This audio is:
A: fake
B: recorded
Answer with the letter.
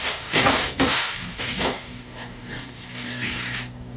A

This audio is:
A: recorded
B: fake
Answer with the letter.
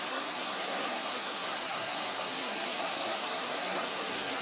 B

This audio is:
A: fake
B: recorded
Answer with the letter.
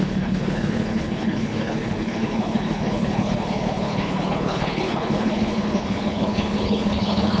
A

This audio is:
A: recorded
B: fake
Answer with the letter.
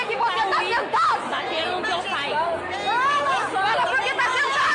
A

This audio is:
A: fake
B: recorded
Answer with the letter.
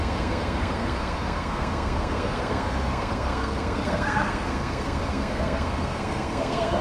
A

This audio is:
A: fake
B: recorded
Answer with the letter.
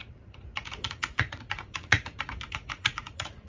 A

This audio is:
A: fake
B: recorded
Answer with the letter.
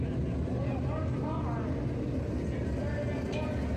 B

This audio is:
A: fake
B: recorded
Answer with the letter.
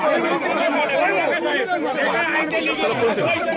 B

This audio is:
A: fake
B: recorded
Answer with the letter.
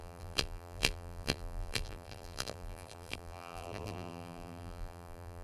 A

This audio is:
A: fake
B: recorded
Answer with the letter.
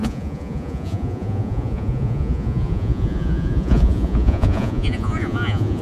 A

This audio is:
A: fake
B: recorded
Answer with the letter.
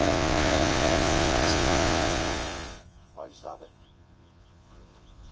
A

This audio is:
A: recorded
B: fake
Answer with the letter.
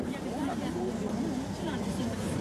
A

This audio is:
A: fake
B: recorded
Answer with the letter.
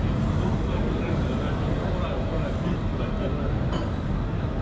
B